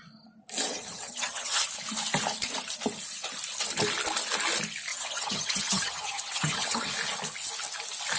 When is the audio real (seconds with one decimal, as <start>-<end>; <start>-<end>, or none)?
0.0-0.7; 1.6-4.9; 6.9-8.2